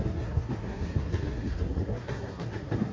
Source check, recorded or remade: remade